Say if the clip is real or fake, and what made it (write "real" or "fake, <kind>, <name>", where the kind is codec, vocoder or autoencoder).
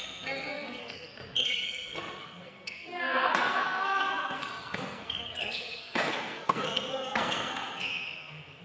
fake, codec, SNAC